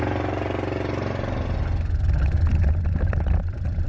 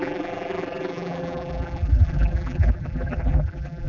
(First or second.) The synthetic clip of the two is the second